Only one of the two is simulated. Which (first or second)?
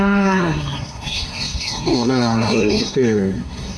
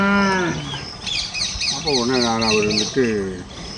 first